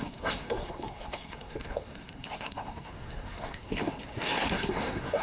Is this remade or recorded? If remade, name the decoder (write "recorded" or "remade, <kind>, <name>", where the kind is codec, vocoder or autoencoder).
remade, codec, SNAC